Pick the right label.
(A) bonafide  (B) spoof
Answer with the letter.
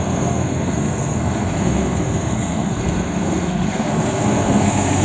B